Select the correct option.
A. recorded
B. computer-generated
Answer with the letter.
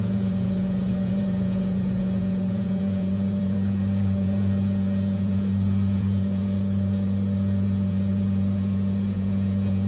B